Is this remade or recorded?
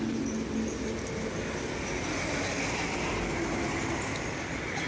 recorded